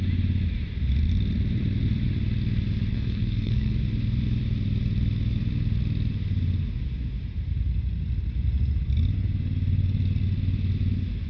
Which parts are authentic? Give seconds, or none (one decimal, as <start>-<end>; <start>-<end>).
0.0-2.9; 3.7-11.3